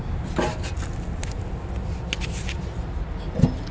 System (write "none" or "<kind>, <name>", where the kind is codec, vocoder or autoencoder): none